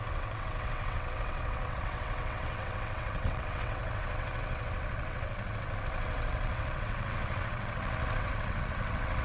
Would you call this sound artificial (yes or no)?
yes